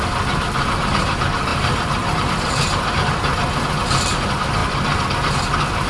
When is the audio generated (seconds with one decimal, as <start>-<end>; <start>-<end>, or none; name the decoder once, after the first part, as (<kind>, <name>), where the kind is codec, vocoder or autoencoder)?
1.5-4.0 (vocoder, BigVGAN v2)